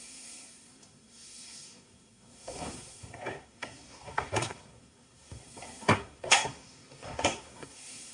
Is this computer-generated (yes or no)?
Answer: yes